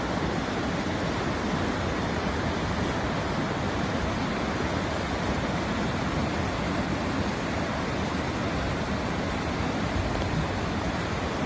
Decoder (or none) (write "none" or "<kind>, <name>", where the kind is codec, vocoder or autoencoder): none